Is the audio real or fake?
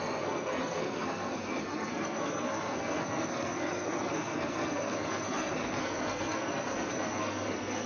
fake